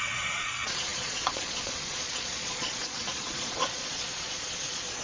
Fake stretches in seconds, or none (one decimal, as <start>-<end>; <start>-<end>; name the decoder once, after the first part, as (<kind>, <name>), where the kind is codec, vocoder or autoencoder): 0.0-5.0 (vocoder, Vocos)